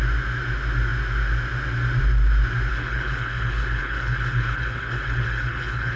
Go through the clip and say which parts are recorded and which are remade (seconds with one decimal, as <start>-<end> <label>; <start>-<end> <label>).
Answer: 0.0-2.7 recorded; 2.7-6.0 remade